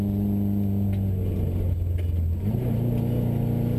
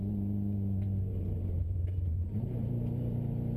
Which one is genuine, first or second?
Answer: first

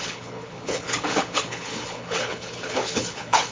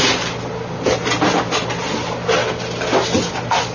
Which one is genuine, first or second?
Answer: second